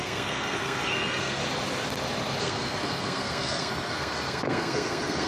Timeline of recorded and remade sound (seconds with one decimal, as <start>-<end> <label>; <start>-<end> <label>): 0.0-1.4 remade; 1.4-2.4 recorded; 2.4-5.3 remade